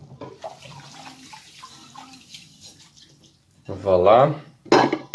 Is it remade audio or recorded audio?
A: recorded